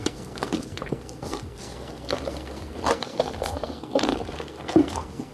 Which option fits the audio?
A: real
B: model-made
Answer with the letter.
B